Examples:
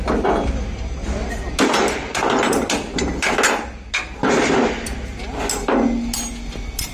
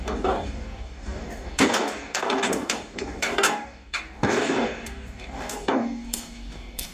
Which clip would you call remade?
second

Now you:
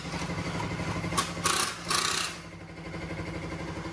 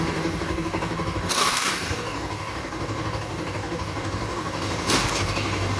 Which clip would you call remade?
second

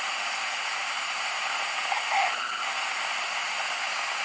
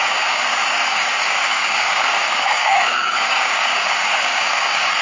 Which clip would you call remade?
second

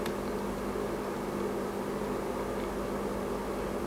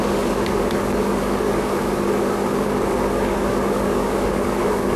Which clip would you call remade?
second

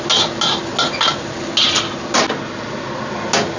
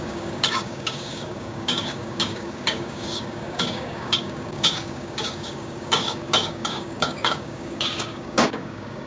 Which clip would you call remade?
second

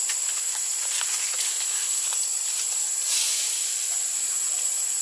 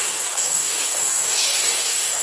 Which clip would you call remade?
second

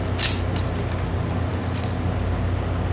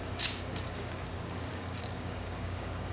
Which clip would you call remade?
second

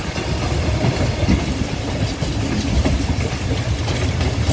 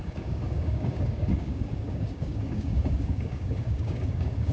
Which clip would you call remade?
second